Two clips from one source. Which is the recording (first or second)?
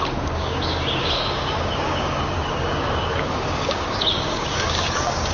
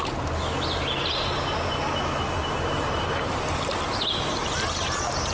second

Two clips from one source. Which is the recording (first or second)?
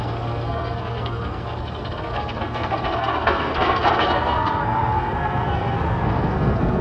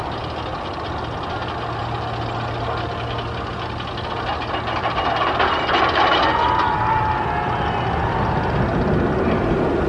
second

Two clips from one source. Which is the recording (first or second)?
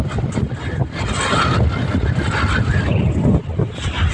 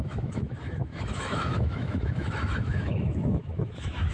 first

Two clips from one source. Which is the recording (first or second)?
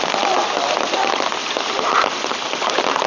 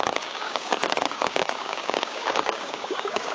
first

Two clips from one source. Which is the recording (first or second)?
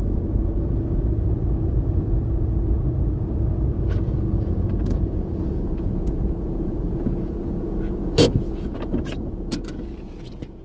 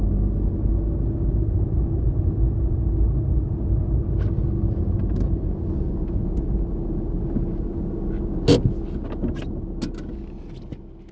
second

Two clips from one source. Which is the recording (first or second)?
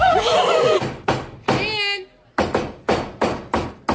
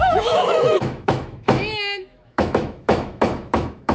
first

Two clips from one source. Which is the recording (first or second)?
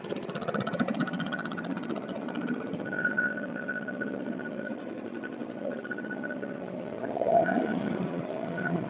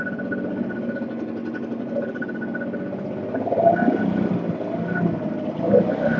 second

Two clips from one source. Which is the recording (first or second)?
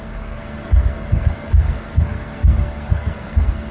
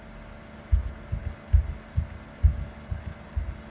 second